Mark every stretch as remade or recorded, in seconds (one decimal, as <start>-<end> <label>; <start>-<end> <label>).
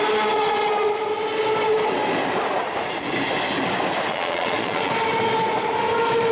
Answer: 0.0-4.1 recorded; 4.1-4.9 remade; 4.9-6.3 recorded